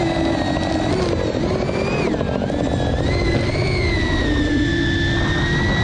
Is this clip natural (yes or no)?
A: yes